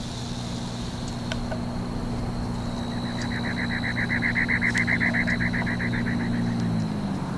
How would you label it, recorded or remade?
recorded